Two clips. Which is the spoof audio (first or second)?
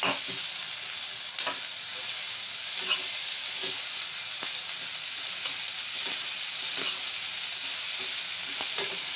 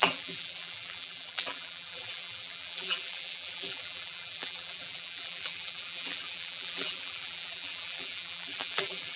second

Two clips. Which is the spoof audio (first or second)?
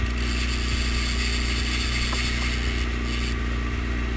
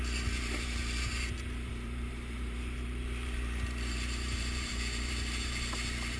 second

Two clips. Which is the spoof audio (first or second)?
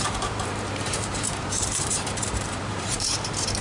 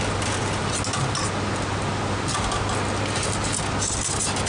first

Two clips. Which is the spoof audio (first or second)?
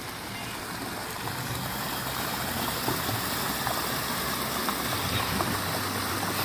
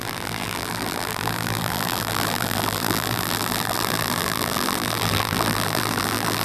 second